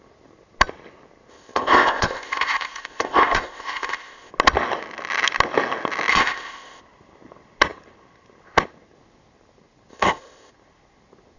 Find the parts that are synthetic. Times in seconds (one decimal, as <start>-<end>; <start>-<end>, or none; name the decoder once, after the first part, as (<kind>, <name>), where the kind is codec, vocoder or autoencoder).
1.3-4.3 (codec, ZipCodec); 6.1-6.8; 9.9-10.5